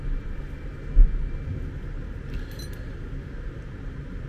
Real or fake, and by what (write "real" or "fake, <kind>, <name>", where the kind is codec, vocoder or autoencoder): real